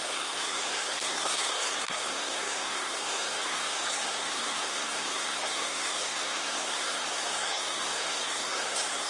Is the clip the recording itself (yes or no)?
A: no